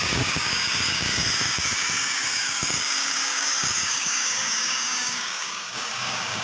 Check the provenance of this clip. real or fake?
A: fake